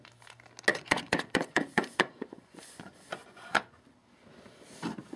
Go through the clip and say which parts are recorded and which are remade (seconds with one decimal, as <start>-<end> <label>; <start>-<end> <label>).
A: 0.0-0.7 recorded; 0.7-3.8 remade; 3.8-5.2 recorded